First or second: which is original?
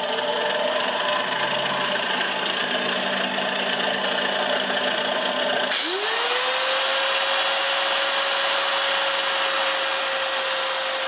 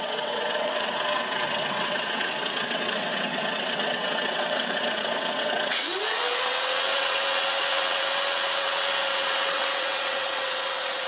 first